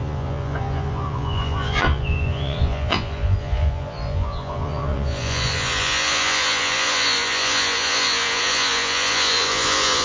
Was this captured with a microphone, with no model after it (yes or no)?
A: no